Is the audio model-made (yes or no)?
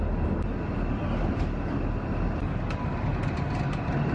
no